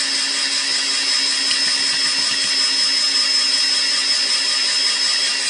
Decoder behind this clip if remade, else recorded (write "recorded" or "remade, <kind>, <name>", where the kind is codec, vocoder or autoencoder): recorded